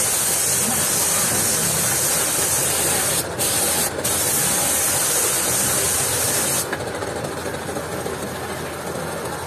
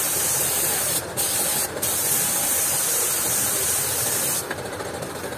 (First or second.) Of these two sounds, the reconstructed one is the second